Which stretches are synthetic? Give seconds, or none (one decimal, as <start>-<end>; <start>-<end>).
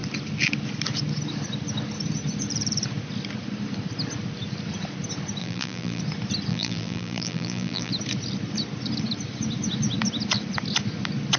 5.4-6.0; 6.5-7.9